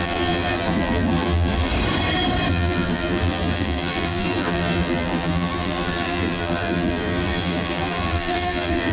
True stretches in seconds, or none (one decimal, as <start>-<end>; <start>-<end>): 1.7-2.5